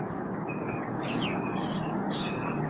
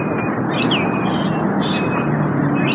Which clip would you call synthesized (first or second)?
first